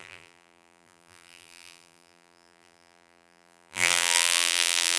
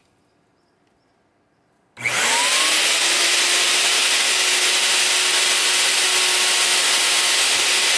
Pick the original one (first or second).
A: second